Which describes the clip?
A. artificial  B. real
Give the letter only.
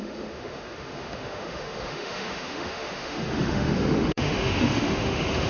A